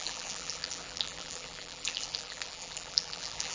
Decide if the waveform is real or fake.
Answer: fake